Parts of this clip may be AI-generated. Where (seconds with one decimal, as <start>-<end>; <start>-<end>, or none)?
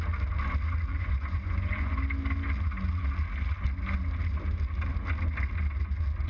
0.9-1.9